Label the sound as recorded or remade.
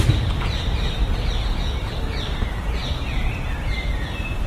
recorded